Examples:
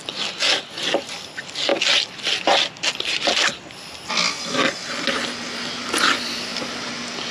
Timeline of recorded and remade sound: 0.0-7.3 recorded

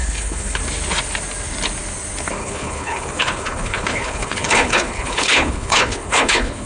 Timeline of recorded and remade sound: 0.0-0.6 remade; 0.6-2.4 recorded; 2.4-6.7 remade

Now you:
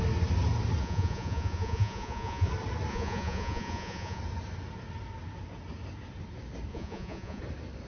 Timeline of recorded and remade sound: 0.0-0.8 recorded; 0.8-2.5 remade; 2.5-2.9 recorded; 2.9-4.2 remade; 4.2-6.7 recorded; 6.7-7.4 remade; 7.4-7.9 recorded